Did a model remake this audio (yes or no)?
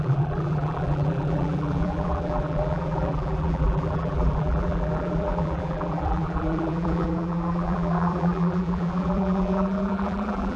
yes